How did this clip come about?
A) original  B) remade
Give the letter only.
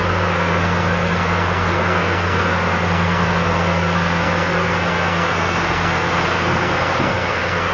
B